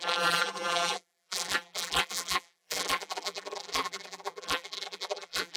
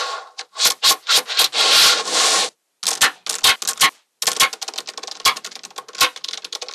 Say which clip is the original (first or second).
second